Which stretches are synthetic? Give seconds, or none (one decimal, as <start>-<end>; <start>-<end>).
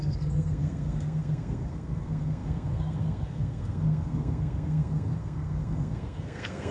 0.0-6.7